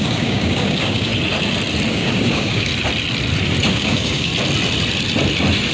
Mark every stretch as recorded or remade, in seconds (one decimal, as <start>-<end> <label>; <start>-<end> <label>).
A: 0.0-1.1 remade; 1.1-1.9 recorded; 1.9-2.7 remade; 2.7-3.7 recorded; 3.7-4.3 remade; 4.3-5.7 recorded